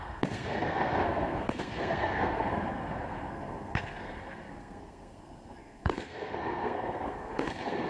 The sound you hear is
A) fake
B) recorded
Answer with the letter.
A